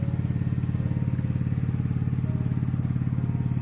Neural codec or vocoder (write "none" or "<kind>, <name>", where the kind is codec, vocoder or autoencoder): none